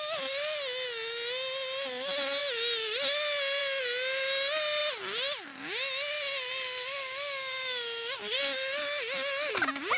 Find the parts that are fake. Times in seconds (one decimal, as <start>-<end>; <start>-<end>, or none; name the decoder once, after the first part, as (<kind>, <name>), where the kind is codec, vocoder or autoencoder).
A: none

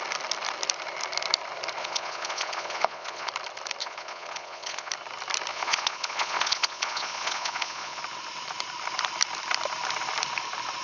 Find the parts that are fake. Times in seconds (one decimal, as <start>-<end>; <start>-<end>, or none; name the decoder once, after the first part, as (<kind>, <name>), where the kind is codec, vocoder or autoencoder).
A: 1.8-3.3 (vocoder, Vocos); 3.8-4.9; 5.5-8.0